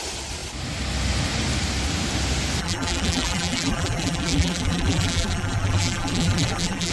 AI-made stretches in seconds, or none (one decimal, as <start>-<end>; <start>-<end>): 2.6-6.9